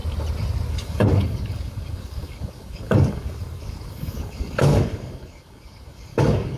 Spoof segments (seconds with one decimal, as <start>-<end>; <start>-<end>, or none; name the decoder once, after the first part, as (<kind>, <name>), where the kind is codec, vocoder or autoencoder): 0.7-6.6 (codec, DAC)